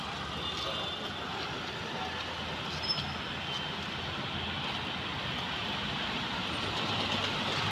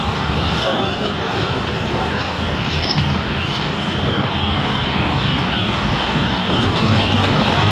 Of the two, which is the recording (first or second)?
first